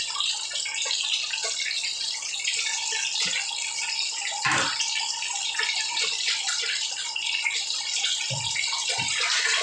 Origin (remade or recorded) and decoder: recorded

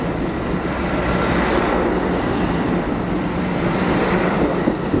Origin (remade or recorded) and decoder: remade, vocoder, BigVGAN v2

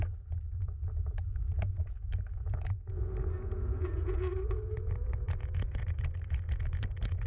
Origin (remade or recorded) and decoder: remade, vocoder, Vocos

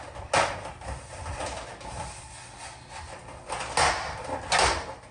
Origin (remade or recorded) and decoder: recorded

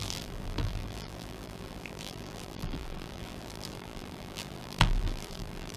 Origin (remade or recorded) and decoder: remade, vocoder, BigVGAN v2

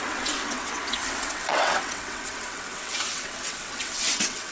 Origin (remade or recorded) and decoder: remade, vocoder, WaveNeXt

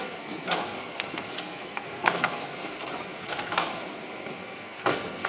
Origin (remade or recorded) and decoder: remade, codec, SNAC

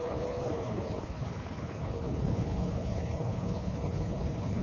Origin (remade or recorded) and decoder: remade, codec, HILCodec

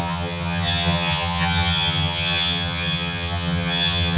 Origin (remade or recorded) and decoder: remade, vocoder, HiFi-GAN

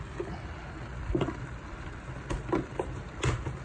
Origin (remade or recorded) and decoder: recorded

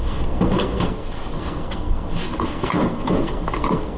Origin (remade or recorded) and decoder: remade, codec, SNAC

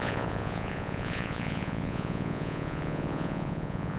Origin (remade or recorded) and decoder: remade, vocoder, Vocos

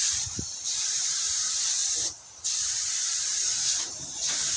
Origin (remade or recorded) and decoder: remade, vocoder, BigVGAN v2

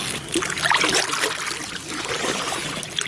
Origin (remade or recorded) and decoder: recorded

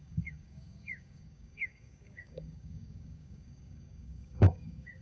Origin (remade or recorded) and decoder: remade, codec, DAC